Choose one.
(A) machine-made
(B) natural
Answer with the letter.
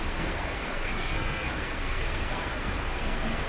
A